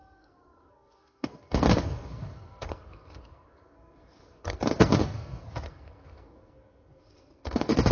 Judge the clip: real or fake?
fake